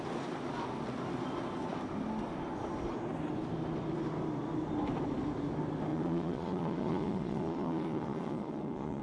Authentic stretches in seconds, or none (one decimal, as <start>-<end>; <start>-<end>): 0.0-5.9